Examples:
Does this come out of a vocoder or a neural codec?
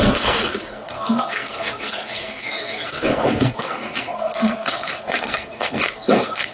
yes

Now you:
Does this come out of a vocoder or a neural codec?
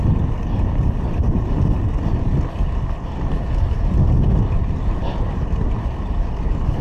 no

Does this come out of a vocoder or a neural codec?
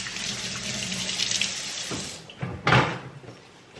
no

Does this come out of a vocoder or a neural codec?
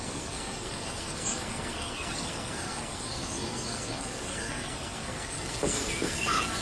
yes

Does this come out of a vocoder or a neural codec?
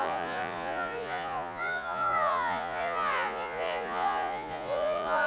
yes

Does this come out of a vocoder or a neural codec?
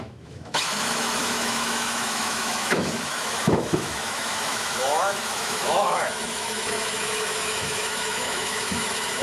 yes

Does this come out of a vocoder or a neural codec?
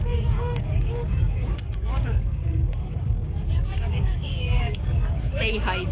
yes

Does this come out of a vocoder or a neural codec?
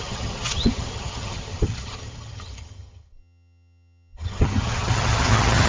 yes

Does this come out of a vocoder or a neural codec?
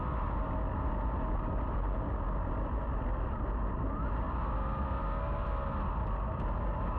no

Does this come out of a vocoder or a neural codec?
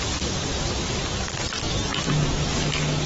no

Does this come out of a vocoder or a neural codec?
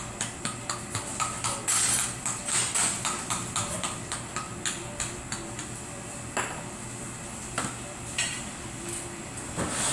no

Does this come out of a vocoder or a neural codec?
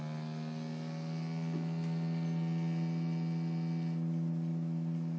no